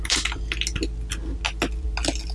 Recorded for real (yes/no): yes